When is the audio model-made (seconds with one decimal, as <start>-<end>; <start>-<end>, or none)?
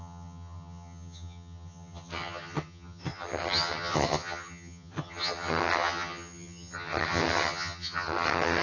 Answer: 0.0-8.6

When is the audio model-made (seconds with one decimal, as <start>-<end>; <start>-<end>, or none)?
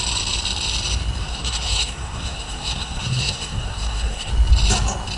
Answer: 1.2-4.3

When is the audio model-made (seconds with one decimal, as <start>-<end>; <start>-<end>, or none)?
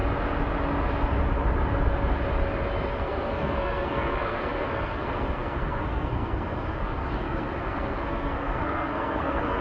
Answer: 2.9-9.6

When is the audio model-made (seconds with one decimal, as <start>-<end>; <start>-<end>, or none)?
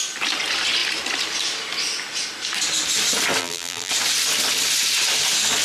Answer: 3.4-3.9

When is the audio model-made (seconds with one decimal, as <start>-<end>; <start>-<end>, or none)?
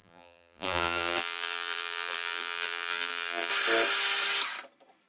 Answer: 0.0-3.5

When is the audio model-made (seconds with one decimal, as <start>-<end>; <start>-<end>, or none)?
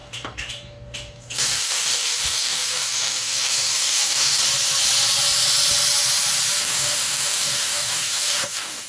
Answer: 0.0-4.4; 6.6-8.9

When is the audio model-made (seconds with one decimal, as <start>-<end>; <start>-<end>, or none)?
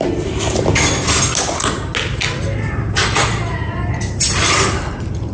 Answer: none